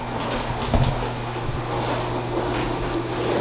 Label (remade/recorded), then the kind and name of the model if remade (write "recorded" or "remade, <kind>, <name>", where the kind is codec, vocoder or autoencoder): recorded